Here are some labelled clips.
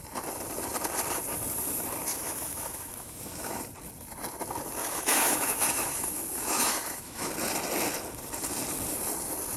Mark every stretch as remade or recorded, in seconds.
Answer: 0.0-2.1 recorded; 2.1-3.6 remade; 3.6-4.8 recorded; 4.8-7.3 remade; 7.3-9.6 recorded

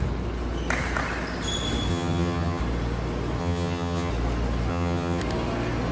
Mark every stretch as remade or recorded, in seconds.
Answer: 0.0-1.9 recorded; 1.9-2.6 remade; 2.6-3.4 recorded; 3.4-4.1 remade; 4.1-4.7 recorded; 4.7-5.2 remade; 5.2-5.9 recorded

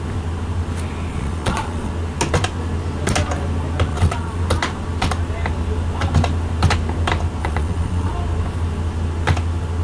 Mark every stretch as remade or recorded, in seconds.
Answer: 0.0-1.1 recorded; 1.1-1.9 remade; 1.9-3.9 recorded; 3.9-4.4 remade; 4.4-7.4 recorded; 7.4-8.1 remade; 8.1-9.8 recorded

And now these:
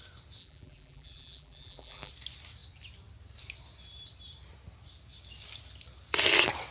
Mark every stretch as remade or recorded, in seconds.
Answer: 0.0-0.4 recorded; 0.4-2.1 remade; 2.1-6.7 recorded

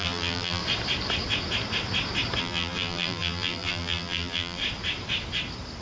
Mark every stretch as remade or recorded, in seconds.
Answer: 0.0-0.6 remade; 0.6-2.4 recorded; 2.4-4.6 remade; 4.6-5.8 recorded

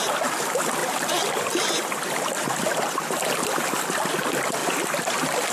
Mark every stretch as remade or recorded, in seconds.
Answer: 0.0-0.8 recorded; 0.8-4.1 remade; 4.1-4.6 recorded; 4.6-5.5 remade